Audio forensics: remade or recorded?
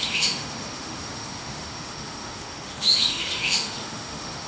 remade